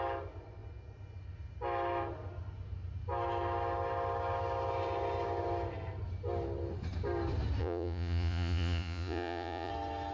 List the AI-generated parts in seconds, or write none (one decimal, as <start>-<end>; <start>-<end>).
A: 7.6-9.7